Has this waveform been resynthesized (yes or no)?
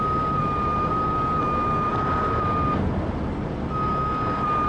no